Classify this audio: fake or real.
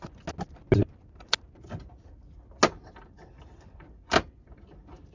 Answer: real